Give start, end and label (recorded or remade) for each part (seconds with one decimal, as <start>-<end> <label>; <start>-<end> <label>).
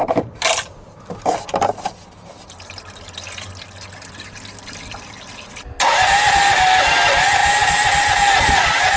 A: 0.0-1.3 remade; 1.3-9.0 recorded